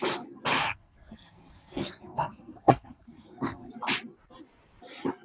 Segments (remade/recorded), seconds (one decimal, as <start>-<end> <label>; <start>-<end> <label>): 0.0-0.6 recorded; 0.6-3.7 remade; 3.7-5.2 recorded